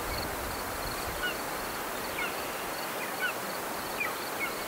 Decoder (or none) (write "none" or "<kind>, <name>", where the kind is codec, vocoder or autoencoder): none